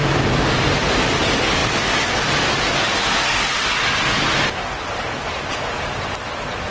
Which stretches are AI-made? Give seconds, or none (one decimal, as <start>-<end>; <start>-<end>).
none